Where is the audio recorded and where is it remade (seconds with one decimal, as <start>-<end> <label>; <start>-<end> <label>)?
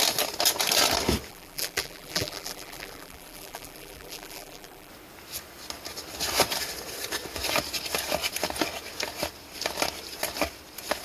0.0-1.3 recorded; 1.3-4.9 remade; 4.9-11.0 recorded